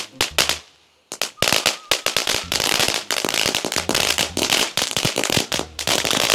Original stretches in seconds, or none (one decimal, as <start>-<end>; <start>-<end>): 0.0-2.2